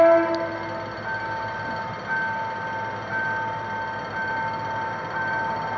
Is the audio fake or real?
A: real